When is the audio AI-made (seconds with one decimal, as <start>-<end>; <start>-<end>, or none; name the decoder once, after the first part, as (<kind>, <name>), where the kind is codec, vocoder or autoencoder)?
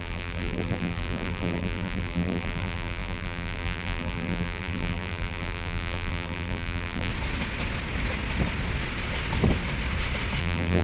0.0-7.1 (vocoder, BigVGAN v2); 10.4-10.8